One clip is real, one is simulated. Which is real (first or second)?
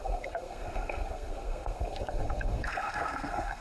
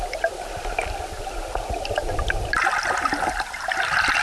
second